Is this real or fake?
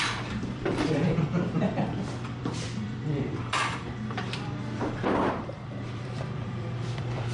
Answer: fake